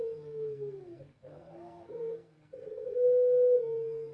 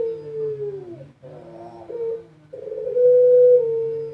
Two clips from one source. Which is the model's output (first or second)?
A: first